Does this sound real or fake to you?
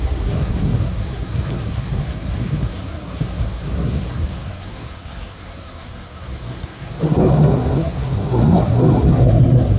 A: fake